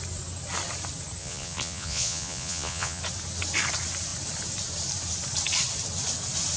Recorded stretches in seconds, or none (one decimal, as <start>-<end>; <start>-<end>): 0.0-1.2; 3.0-6.6